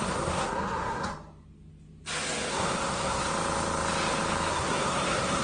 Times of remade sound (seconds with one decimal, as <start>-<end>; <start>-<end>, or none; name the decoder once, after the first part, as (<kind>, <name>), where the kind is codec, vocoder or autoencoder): 0.0-1.1 (codec, SNAC); 2.5-3.3; 4.5-5.4